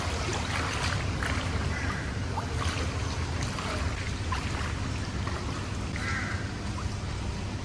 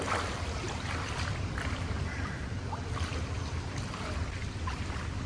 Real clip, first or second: first